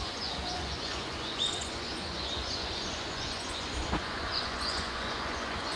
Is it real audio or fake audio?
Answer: fake